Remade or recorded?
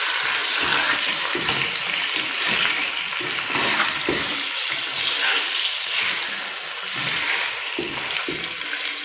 recorded